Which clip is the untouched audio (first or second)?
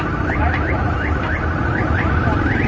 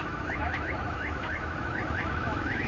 first